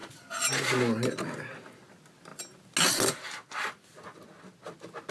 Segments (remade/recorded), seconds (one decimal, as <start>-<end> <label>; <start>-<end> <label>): 0.0-5.1 recorded